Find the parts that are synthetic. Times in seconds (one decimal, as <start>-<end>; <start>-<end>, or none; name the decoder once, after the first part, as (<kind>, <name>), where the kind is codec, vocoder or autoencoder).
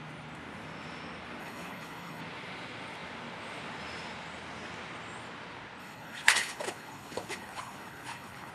1.4-2.2 (codec, HILCodec); 5.8-8.5